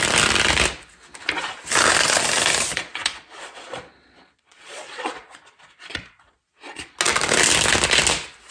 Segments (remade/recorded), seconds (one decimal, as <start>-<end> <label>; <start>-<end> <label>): 0.0-2.7 recorded; 2.7-6.9 remade; 6.9-8.5 recorded